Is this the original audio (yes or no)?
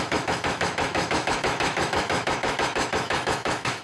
no